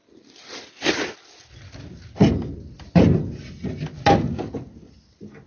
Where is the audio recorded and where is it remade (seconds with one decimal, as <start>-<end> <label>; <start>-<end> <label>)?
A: 0.0-5.5 recorded